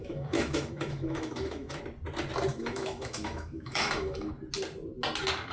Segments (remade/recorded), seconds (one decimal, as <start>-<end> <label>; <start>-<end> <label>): 0.0-1.8 remade; 1.8-2.5 recorded; 2.5-4.3 remade; 4.3-5.5 recorded